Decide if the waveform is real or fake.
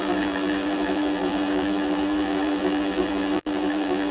fake